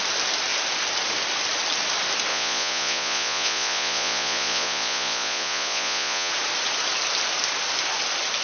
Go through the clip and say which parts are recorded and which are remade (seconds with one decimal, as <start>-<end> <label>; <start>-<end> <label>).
0.0-2.3 recorded; 2.3-6.3 remade; 6.3-8.4 recorded